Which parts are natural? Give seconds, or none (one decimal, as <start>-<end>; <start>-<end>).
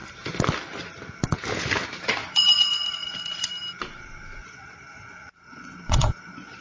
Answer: 0.0-2.2; 3.5-4.4